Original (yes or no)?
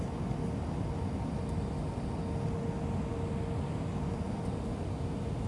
yes